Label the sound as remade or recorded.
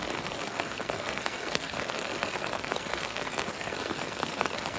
remade